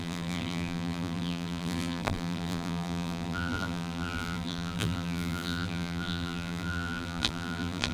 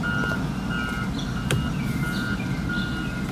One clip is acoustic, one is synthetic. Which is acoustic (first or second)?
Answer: second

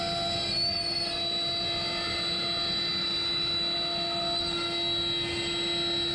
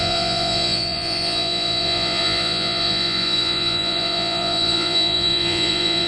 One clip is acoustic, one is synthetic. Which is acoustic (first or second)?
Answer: first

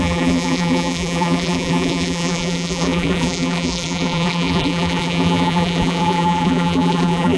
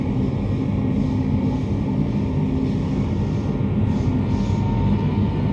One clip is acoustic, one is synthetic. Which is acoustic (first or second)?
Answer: second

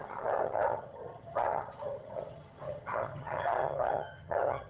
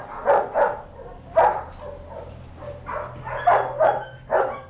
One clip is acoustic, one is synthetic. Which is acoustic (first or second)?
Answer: second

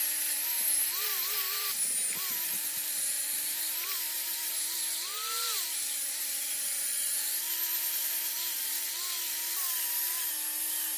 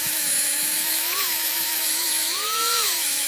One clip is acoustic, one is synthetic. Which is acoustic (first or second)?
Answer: first